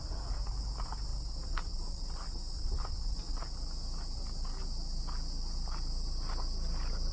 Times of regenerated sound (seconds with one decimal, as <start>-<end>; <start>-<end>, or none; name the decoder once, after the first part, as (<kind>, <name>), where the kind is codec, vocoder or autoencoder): none